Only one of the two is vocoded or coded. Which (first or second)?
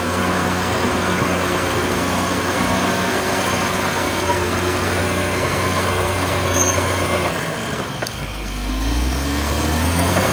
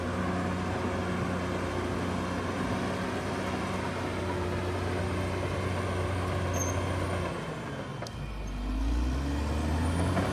first